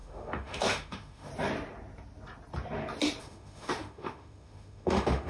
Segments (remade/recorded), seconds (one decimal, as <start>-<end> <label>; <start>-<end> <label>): 0.0-1.3 remade; 1.3-3.2 recorded; 3.2-5.3 remade